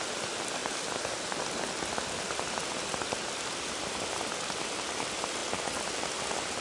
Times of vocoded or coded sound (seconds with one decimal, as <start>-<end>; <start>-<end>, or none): none